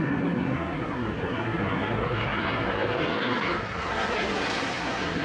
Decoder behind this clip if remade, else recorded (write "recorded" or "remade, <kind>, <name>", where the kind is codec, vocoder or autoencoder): remade, codec, SNAC